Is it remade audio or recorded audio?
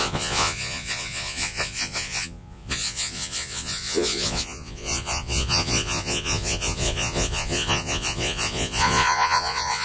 remade